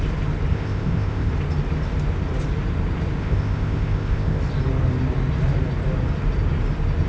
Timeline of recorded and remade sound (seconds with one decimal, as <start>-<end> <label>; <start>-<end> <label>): 0.0-0.5 recorded; 0.5-1.3 remade; 1.3-3.2 recorded; 3.2-4.4 remade; 4.4-7.1 recorded